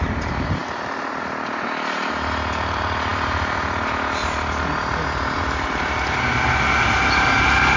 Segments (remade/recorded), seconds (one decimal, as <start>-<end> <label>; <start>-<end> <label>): 0.0-7.8 recorded